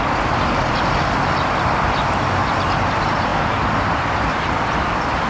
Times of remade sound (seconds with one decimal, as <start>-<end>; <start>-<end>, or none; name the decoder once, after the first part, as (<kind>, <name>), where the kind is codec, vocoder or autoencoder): 0.0-3.3 (vocoder, BigVGAN v2); 4.0-5.3